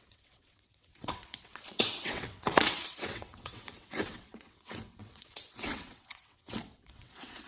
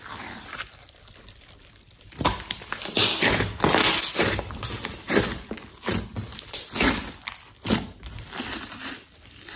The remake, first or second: first